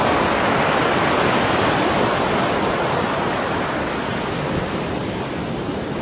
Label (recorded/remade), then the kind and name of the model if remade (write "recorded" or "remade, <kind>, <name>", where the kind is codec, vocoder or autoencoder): recorded